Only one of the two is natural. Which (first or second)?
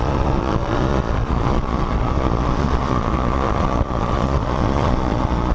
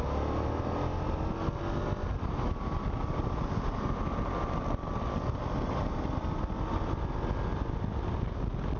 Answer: second